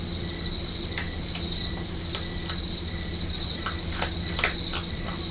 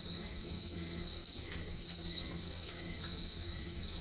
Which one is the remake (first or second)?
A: second